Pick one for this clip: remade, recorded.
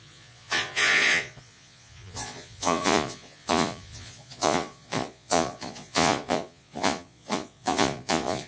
remade